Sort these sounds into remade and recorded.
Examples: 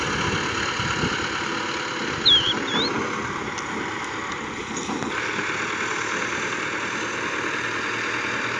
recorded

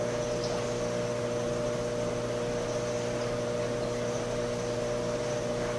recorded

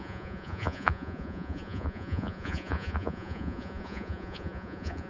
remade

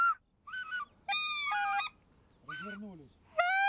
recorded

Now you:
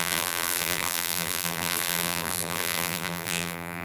remade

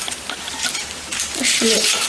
remade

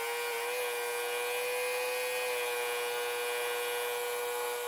recorded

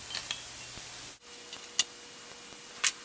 recorded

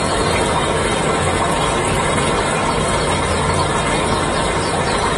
recorded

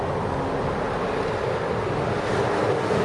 recorded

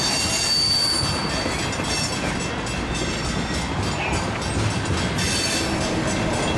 recorded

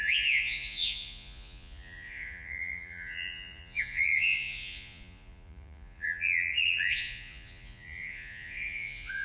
remade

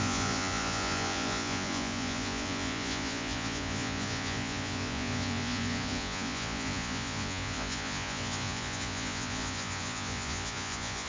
remade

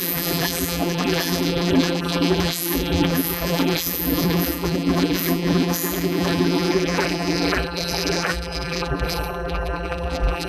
remade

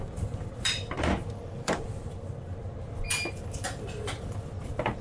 remade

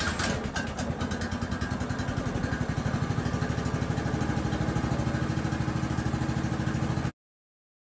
recorded